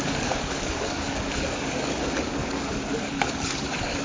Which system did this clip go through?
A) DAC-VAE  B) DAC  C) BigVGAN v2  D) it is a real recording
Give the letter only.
B